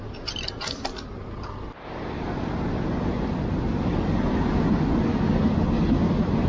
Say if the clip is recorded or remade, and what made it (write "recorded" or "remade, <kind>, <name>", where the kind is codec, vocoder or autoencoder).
recorded